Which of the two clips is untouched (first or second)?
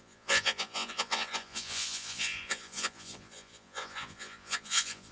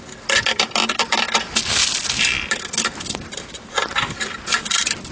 second